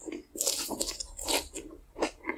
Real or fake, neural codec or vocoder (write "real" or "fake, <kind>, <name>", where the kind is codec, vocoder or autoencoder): real